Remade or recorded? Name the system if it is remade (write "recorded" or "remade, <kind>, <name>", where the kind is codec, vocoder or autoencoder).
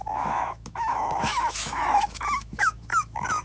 remade, autoencoder, DAC-VAE